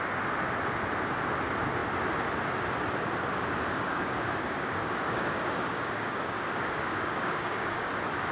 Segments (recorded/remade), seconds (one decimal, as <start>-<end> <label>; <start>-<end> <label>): 0.0-3.3 recorded; 3.3-7.9 remade; 7.9-8.3 recorded